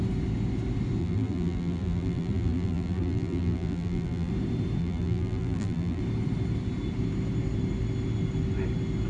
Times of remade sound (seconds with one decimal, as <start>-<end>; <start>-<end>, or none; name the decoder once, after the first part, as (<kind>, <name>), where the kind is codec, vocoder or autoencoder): 1.0-4.3 (vocoder, BigVGAN v2); 4.8-6.0